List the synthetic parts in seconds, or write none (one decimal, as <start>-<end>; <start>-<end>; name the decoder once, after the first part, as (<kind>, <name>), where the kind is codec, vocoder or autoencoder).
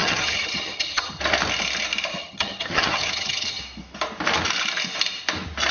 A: 0.0-1.2 (vocoder, HiFi-GAN); 2.2-3.6